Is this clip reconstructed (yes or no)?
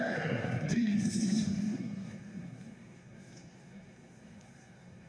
yes